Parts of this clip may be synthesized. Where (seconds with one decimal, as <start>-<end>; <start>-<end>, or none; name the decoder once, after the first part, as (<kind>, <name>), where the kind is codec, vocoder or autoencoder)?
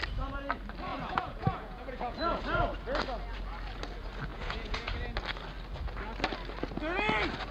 0.9-2.4 (vocoder, Vocos); 4.3-4.9